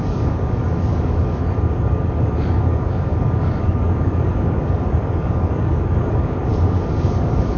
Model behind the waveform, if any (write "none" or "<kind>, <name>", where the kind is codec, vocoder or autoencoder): codec, DAC